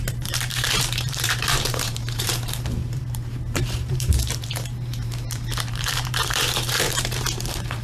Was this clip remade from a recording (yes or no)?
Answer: yes